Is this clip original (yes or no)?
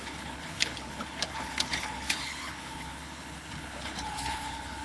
no